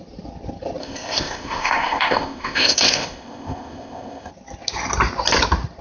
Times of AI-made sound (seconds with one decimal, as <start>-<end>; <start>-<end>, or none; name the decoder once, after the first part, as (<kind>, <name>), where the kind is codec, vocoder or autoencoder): 0.8-4.3 (codec, ZipCodec)